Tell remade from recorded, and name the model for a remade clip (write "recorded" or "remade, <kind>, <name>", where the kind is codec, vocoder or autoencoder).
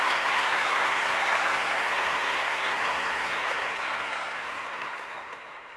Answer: remade, codec, SNAC